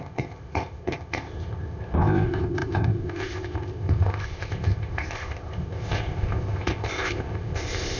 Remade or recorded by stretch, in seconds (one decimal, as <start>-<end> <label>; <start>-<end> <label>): 0.0-8.0 remade